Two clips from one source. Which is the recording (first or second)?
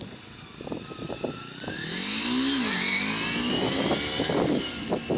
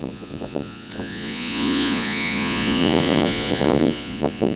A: first